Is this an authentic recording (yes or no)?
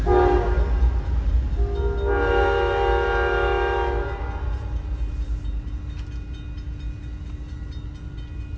yes